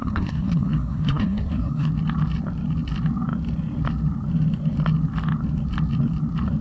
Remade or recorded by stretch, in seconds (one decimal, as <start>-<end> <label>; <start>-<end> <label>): 0.0-1.9 remade; 1.9-6.6 recorded